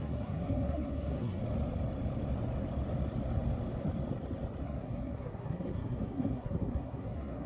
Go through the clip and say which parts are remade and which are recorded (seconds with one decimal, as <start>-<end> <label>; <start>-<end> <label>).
0.0-1.4 remade; 1.4-4.6 recorded; 4.6-7.5 remade